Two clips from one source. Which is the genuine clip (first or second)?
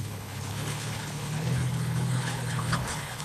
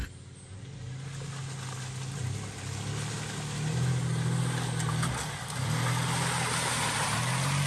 second